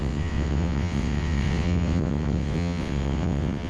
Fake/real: fake